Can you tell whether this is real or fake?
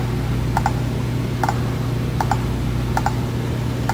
real